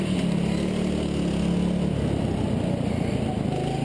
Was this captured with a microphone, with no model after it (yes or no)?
yes